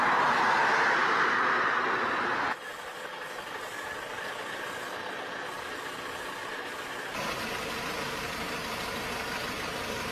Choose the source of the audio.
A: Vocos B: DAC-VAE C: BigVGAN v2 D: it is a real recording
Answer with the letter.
D